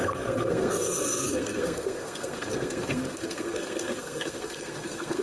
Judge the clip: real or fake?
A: fake